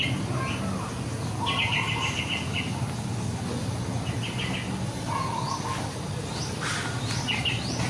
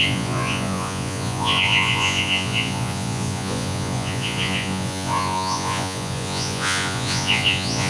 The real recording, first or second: first